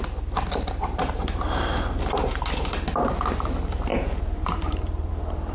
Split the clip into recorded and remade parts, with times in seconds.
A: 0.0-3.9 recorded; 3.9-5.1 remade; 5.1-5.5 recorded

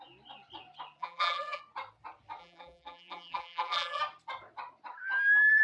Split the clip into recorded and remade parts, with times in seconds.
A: 0.0-1.0 recorded; 1.0-1.6 remade; 1.6-2.4 recorded; 2.4-4.0 remade; 4.0-5.6 recorded

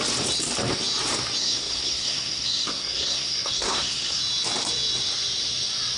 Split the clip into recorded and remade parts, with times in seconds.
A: 0.0-1.4 recorded; 1.4-4.2 remade; 4.2-6.0 recorded

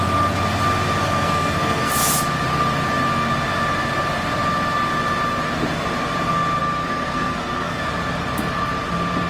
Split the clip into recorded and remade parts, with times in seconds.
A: 0.0-1.0 recorded; 1.0-1.9 remade; 1.9-6.6 recorded; 6.6-7.8 remade; 7.8-9.3 recorded